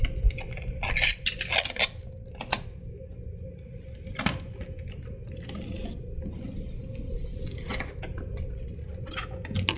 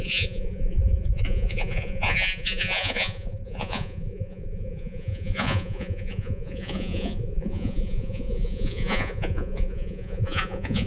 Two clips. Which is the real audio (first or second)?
first